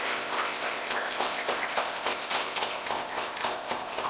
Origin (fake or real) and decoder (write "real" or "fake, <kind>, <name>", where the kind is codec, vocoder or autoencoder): fake, codec, ZipCodec